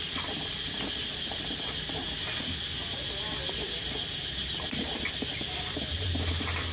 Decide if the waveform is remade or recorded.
recorded